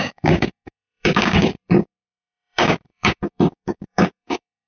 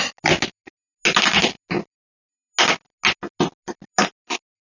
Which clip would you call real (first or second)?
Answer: second